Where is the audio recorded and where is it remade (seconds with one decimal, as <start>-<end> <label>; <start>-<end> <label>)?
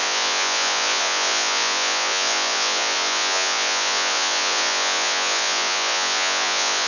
0.0-6.9 remade